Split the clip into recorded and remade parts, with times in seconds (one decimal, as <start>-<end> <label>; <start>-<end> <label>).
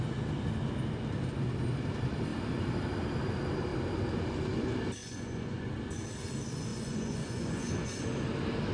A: 0.0-5.0 recorded; 5.0-5.7 remade; 5.7-6.7 recorded; 6.7-8.0 remade; 8.0-8.7 recorded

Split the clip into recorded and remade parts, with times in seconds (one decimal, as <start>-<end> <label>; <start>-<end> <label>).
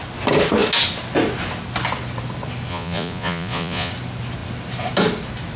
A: 0.0-2.7 recorded; 2.7-3.9 remade; 3.9-5.6 recorded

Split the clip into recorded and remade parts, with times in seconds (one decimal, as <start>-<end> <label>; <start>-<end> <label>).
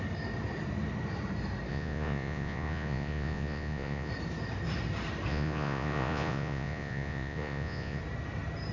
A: 0.0-1.7 recorded; 1.7-4.1 remade; 4.1-5.3 recorded; 5.3-8.0 remade; 8.0-8.7 recorded